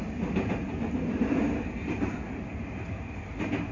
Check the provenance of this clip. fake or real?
real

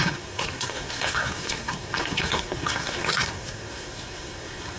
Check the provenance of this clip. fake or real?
fake